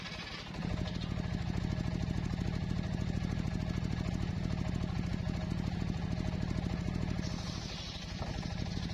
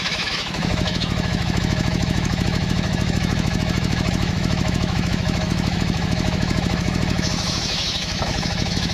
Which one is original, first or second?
first